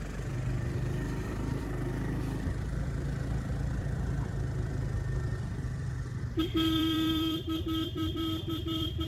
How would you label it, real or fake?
fake